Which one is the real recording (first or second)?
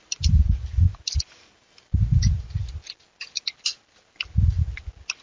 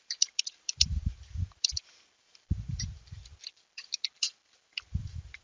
first